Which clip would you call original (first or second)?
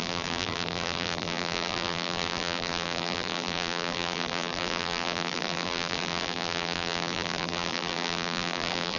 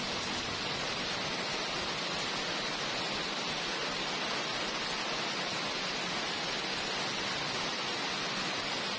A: second